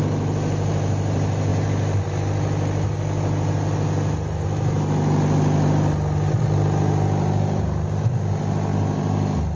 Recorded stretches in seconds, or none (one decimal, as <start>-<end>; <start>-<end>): 0.0-9.6